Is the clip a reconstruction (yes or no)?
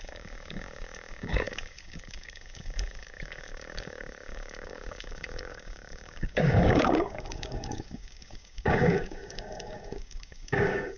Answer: yes